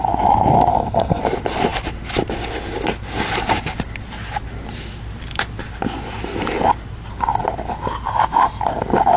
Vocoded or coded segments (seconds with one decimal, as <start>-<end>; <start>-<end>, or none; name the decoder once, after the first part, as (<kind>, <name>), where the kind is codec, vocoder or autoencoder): 0.7-1.2 (codec, SNAC)